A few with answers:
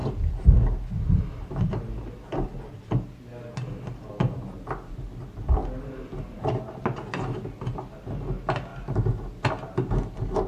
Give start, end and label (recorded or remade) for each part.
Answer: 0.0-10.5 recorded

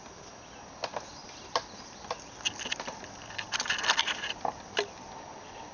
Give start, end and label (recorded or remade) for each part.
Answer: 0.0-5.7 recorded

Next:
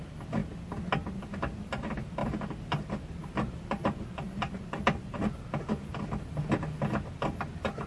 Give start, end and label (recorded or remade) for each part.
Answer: 0.0-2.2 recorded; 2.2-5.2 remade; 5.2-7.9 recorded

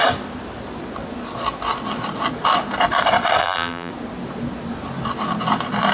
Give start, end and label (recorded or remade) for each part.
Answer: 0.0-3.4 recorded; 3.4-3.9 remade; 3.9-5.9 recorded